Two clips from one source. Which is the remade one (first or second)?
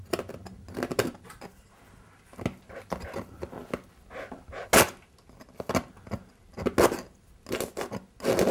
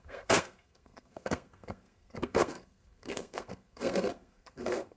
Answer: second